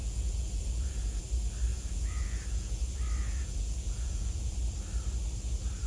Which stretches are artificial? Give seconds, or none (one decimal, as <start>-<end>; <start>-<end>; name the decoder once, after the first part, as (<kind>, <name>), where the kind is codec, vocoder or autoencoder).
0.0-1.2 (vocoder, Vocos); 1.7-2.8; 3.2-4.6